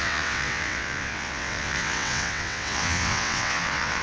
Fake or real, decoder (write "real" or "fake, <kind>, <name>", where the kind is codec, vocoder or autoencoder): fake, vocoder, WaveNeXt